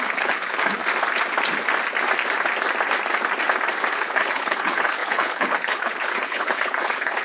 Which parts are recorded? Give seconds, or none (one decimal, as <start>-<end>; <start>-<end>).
0.8-3.9